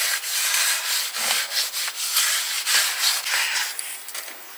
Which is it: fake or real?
real